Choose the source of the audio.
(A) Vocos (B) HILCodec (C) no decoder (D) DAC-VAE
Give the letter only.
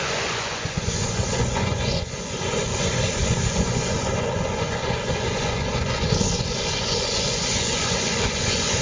A